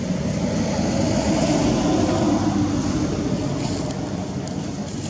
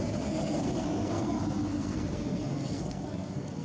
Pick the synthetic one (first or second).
second